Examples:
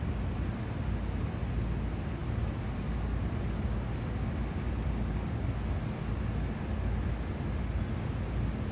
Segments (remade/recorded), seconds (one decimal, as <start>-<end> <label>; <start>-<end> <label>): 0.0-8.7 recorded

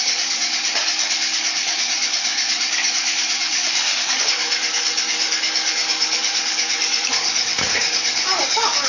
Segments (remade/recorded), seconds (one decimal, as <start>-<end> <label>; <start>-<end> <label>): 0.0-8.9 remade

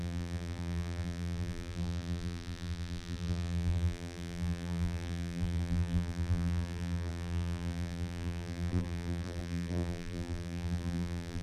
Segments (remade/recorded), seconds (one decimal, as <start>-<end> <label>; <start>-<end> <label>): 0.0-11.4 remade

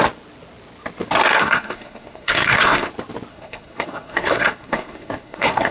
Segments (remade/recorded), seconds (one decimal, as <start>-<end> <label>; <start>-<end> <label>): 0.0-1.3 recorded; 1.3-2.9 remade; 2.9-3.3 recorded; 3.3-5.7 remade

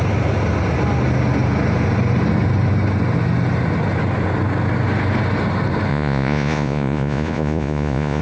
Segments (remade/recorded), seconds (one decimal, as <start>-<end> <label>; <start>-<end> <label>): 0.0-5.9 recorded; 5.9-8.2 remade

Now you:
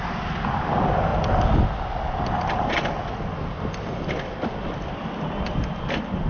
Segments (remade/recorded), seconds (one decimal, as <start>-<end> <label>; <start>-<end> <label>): 0.0-6.3 recorded